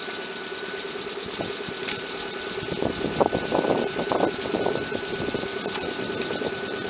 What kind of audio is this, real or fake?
fake